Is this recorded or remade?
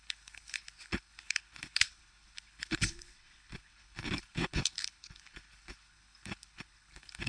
remade